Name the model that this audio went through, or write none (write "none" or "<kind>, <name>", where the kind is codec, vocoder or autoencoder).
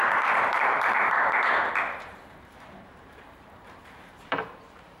vocoder, BigVGAN v2